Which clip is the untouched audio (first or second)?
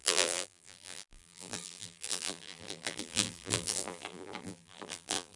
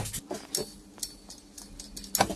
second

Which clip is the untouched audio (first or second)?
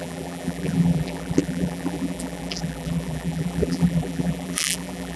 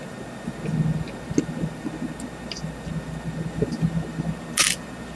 second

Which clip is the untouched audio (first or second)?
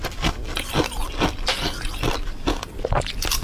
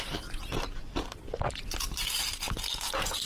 first